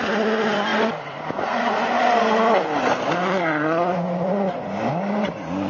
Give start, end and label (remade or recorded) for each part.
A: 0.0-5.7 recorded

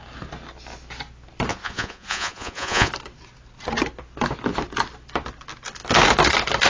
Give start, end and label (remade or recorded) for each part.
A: 0.0-1.5 recorded; 1.5-2.9 remade; 2.9-6.7 recorded

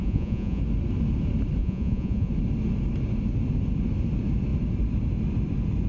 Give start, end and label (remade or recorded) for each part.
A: 0.0-0.6 remade; 0.6-1.6 recorded; 1.6-2.3 remade; 2.3-5.9 recorded